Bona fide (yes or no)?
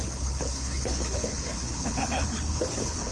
no